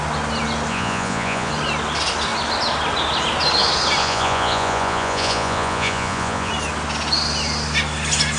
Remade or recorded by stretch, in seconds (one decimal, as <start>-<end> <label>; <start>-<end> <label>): 0.0-0.7 recorded; 0.7-1.5 remade; 1.5-4.0 recorded; 4.0-6.5 remade; 6.5-8.4 recorded